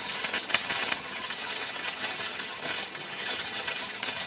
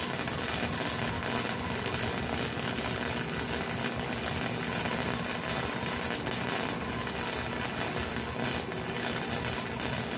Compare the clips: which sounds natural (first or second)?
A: second